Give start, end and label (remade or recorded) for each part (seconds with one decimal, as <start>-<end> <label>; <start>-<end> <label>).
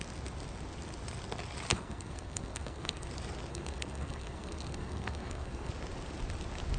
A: 0.0-1.7 recorded; 1.7-3.1 remade; 3.1-3.5 recorded; 3.5-5.7 remade; 5.7-6.8 recorded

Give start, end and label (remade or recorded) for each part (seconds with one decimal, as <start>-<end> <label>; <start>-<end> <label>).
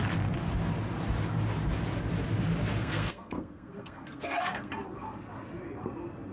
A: 0.0-2.8 recorded; 2.8-4.7 remade; 4.7-6.3 recorded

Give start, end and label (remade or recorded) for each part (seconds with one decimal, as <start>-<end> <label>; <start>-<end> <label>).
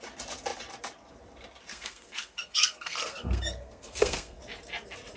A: 0.0-1.7 recorded; 1.7-4.4 remade; 4.4-5.2 recorded